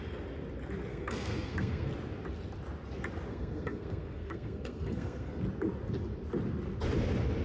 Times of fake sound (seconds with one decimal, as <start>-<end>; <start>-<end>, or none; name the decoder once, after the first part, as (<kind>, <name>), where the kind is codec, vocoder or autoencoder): 0.9-1.9 (codec, SNAC); 3.3-5.4